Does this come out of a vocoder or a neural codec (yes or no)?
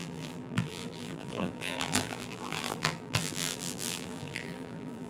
yes